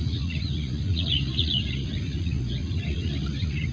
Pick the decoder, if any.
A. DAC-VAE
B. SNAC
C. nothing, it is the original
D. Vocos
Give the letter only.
D